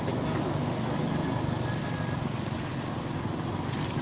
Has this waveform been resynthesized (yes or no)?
no